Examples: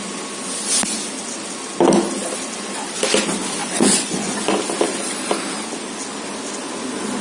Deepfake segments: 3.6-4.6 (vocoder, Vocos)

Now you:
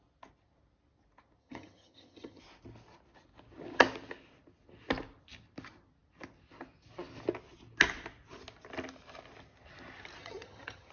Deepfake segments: 1.4-2.4 (vocoder, HiFi-GAN); 10.2-10.9

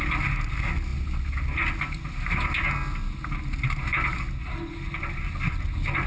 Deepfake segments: none

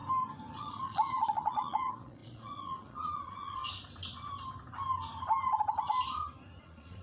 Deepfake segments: 0.5-3.6 (vocoder, Vocos); 6.6-7.0